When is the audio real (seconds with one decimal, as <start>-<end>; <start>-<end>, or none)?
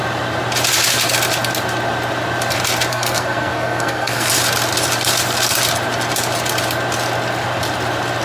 0.0-2.9; 4.3-8.2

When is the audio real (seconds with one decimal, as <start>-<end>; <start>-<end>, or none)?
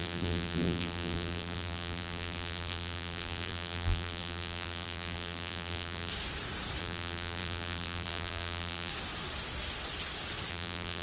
6.1-6.8; 8.9-10.5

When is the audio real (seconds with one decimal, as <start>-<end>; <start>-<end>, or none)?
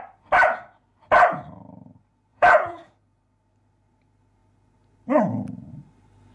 0.0-2.3; 3.2-6.3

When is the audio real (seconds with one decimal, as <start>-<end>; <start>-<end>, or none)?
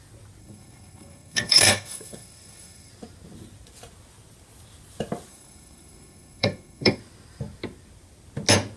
0.0-0.4; 2.9-5.3; 7.0-8.8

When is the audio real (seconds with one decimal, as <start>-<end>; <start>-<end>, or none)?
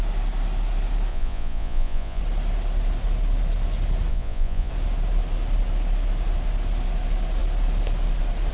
0.0-1.1; 2.2-4.1; 4.7-8.5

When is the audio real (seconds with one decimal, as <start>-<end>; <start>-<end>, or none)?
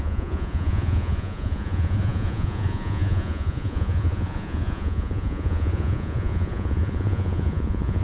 none